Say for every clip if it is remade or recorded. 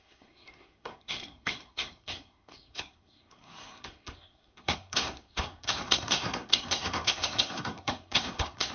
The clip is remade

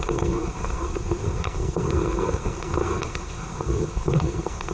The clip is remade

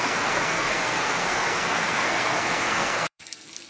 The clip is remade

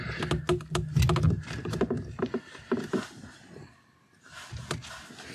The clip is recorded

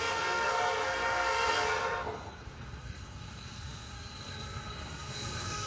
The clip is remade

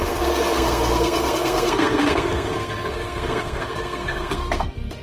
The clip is remade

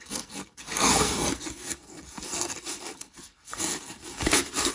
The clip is remade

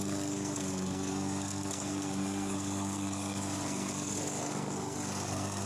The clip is remade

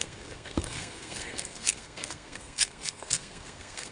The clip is remade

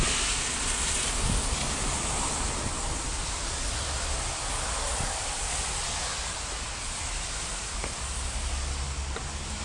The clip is recorded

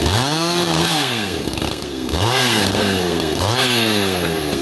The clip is remade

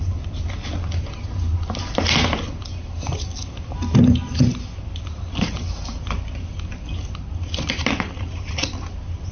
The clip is recorded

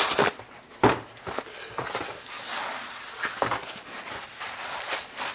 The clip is recorded